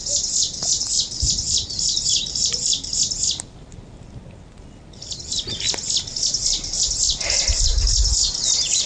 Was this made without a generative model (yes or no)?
yes